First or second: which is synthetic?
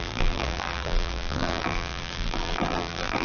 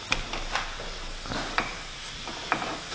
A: first